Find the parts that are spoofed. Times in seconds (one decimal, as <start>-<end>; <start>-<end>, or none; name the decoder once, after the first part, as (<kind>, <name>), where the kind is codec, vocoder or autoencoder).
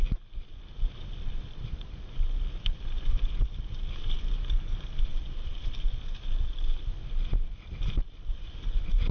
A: none